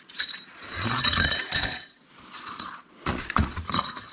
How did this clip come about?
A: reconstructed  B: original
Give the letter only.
A